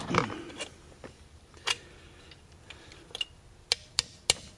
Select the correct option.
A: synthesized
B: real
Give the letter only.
B